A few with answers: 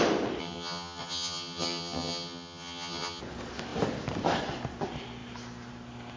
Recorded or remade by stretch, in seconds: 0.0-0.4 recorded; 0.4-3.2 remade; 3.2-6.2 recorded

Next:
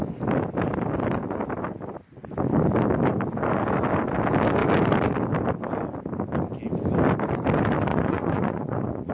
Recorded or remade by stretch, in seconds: 0.0-7.9 recorded; 7.9-9.1 remade

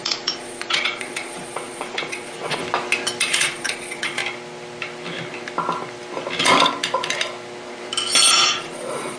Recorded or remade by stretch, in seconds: 0.0-2.6 remade; 2.6-3.2 recorded; 3.2-4.2 remade; 4.2-8.3 recorded; 8.3-9.2 remade

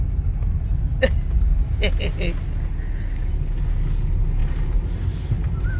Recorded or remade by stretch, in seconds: 0.0-4.4 recorded; 4.4-5.8 remade

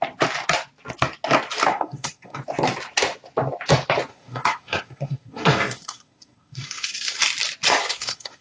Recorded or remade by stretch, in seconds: 0.0-1.7 recorded; 1.7-2.4 remade; 2.4-4.1 recorded; 4.1-7.2 remade; 7.2-7.8 recorded; 7.8-8.4 remade

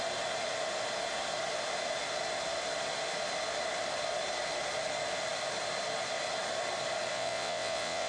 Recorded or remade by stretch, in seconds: 0.0-7.1 recorded; 7.1-8.1 remade